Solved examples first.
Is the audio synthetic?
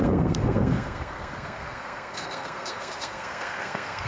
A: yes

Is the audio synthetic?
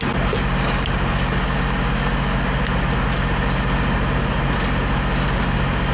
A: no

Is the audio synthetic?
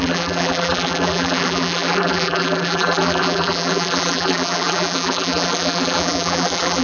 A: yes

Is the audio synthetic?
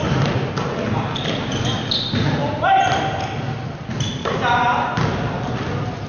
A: no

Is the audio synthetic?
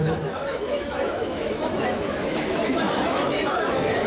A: yes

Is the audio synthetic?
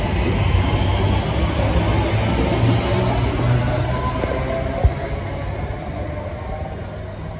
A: no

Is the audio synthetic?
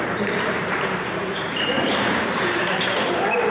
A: yes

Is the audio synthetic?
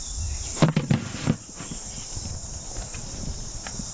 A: no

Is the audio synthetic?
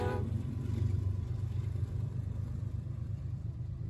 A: yes